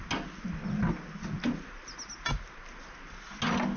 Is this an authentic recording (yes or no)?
yes